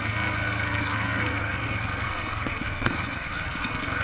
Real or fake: fake